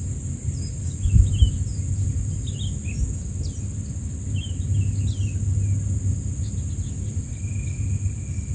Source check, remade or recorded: recorded